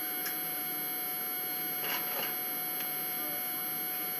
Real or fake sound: real